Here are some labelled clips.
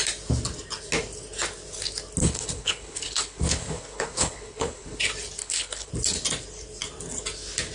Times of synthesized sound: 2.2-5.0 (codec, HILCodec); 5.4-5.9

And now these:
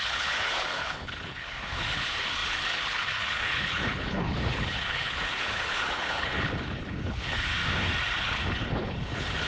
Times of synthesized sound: 0.0-7.5 (codec, HILCodec); 8.2-9.5

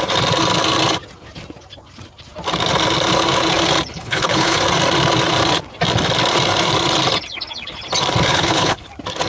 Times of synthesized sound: 3.9-4.6 (codec, HILCodec); 8.3-8.9

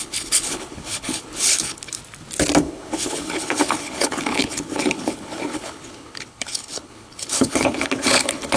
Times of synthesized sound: 0.0-1.9 (codec, HILCodec); 2.6-8.6

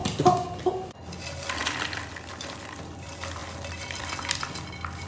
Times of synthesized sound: none

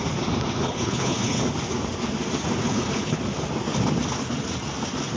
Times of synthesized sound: 0.6-1.4 (codec, HILCodec); 2.6-3.2

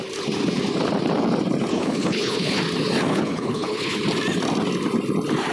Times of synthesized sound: 1.7-2.6 (codec, HILCodec); 3.1-4.0

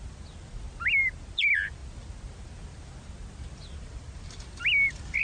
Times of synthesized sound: none